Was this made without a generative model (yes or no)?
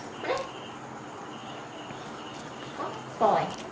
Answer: yes